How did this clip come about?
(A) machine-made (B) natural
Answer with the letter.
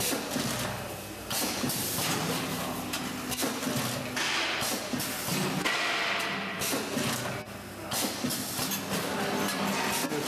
B